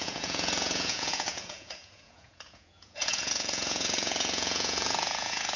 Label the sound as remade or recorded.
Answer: remade